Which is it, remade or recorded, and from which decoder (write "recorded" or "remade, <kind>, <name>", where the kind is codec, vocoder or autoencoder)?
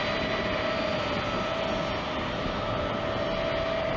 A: recorded